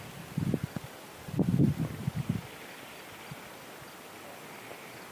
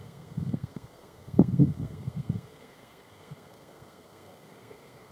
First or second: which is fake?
second